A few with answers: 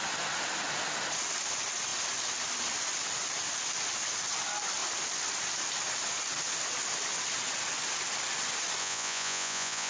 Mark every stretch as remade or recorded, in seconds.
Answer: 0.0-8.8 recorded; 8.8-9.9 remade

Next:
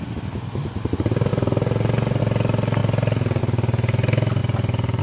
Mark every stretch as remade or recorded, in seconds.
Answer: 0.0-5.0 recorded

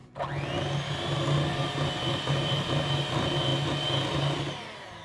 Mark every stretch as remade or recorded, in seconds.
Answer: 0.0-5.0 recorded